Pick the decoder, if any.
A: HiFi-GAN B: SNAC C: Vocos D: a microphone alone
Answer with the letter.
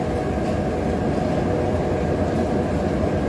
D